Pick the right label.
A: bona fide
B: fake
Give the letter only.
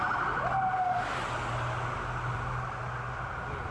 A